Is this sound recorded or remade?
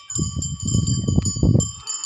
recorded